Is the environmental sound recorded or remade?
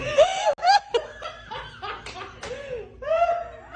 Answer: recorded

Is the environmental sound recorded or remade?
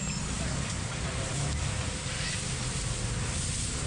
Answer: recorded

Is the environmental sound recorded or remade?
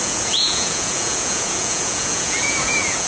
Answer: remade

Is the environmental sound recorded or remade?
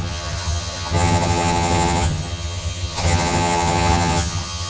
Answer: remade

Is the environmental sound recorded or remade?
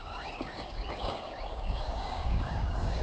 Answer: remade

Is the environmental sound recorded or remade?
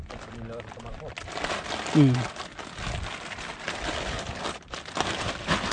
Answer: recorded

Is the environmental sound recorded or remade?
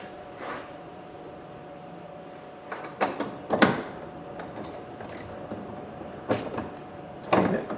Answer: remade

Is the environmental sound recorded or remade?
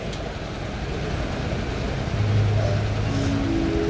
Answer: recorded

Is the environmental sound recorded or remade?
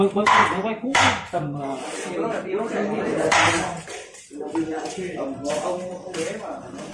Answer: remade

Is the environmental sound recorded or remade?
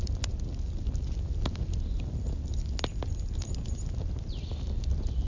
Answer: recorded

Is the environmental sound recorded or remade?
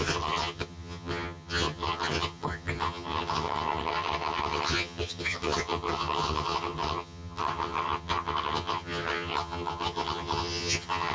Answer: remade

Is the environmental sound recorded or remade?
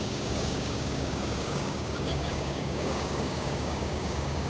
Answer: remade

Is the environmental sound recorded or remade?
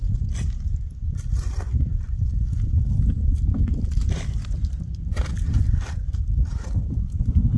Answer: remade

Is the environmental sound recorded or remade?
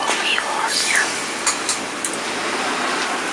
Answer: recorded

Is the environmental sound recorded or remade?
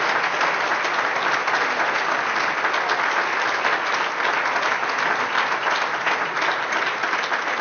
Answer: recorded